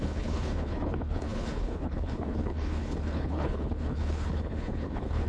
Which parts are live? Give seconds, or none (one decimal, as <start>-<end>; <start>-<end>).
none